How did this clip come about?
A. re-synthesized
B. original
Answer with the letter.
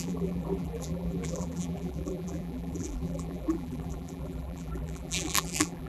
A